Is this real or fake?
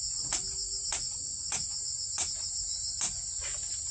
real